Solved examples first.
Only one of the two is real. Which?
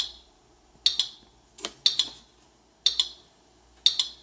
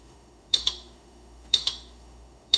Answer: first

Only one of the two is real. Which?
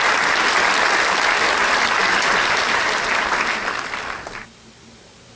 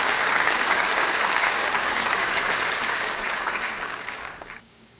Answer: first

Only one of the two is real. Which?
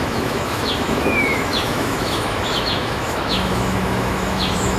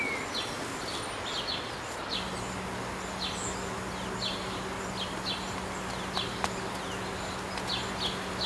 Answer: second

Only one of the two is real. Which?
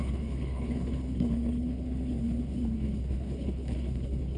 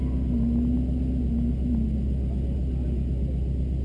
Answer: second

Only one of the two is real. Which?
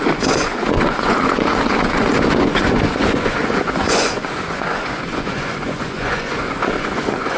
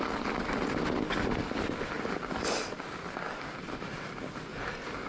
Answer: second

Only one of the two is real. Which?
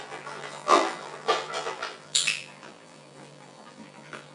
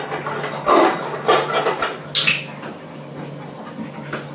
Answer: second